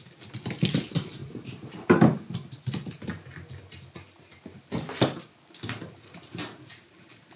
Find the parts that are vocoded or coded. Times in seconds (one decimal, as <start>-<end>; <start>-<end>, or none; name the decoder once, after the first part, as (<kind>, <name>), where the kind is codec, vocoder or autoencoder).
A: none